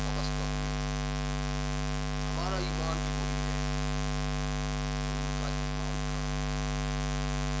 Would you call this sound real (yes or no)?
yes